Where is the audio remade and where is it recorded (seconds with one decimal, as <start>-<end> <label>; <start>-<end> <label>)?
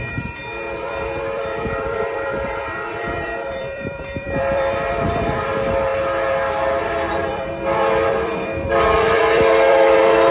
0.0-5.9 remade; 5.9-6.8 recorded; 6.8-10.3 remade